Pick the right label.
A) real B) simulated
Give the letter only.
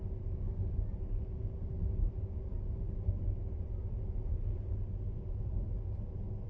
A